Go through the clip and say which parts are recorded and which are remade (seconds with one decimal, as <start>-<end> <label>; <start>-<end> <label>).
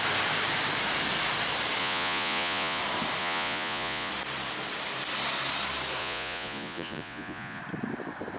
0.0-1.8 recorded; 1.8-2.8 remade; 2.8-3.2 recorded; 3.2-4.1 remade; 4.1-6.0 recorded; 6.0-7.6 remade; 7.6-8.4 recorded